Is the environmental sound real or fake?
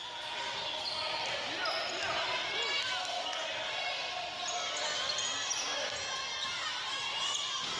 real